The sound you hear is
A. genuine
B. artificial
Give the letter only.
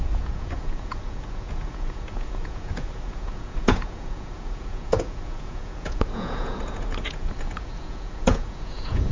B